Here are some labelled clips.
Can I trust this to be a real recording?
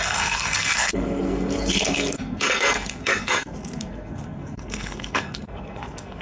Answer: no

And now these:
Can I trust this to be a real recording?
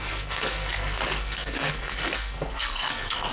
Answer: no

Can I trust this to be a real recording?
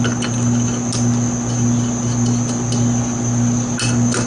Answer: yes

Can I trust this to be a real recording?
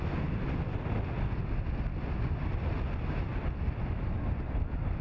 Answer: yes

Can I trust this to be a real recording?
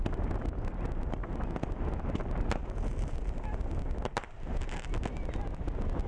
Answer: yes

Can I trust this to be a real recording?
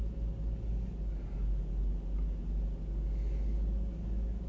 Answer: yes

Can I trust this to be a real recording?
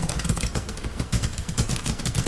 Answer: no